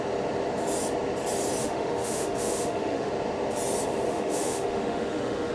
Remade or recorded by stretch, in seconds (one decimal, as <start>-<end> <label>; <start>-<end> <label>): 0.0-1.6 recorded; 1.6-3.1 remade; 3.1-4.1 recorded; 4.1-5.5 remade